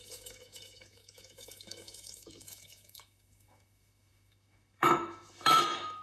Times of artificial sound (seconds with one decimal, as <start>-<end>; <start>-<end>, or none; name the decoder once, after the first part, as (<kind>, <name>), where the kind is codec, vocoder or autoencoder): 0.0-6.0 (autoencoder, DAC-VAE)

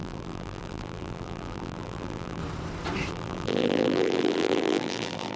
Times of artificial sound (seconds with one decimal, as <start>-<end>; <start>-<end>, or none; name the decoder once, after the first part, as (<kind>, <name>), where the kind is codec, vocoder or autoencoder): 0.0-2.4 (vocoder, BigVGAN v2); 3.1-5.4

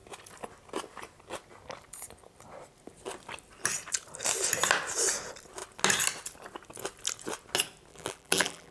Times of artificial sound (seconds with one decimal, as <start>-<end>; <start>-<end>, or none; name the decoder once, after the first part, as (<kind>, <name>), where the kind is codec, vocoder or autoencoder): 7.9-8.7 (vocoder, BigVGAN v2)